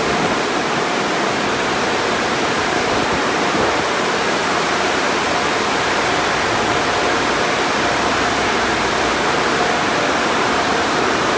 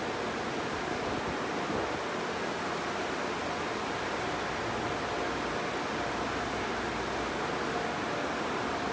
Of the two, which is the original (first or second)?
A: second